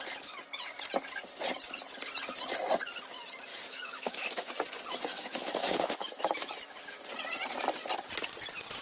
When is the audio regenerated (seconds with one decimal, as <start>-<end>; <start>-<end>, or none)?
3.5-4.6; 5.1-6.5